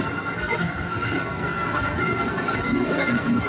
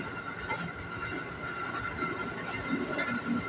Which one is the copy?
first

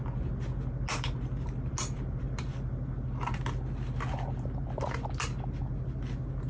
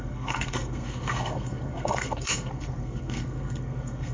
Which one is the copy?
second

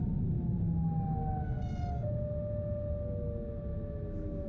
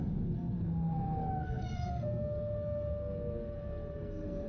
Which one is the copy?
second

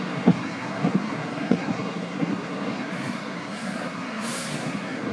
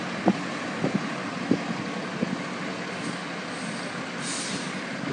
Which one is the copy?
first